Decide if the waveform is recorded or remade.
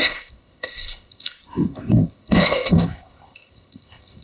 remade